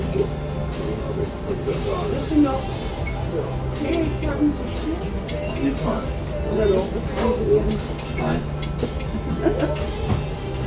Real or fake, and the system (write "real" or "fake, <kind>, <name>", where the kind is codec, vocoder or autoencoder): real